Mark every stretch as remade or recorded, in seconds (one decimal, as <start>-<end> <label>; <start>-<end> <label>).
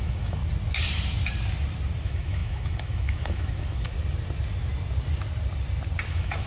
0.0-0.4 remade; 0.4-2.0 recorded; 2.0-3.9 remade; 3.9-6.1 recorded; 6.1-6.5 remade